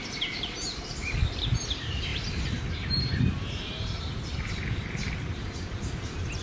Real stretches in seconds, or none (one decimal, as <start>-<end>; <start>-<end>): 1.2-1.7